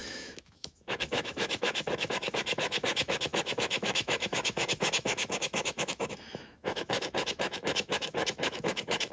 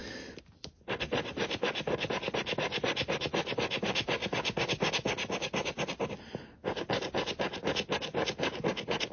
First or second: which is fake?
first